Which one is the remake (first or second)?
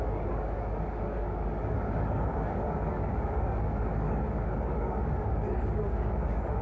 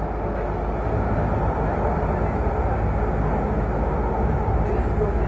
first